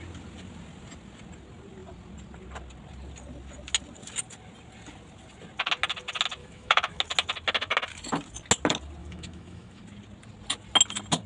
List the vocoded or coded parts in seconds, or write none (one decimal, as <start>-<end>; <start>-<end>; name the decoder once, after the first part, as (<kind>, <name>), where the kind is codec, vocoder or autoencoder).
6.4-7.0 (autoencoder, DAC-VAE); 9.0-9.8